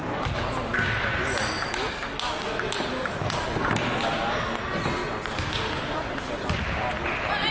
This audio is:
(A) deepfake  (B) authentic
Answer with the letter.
B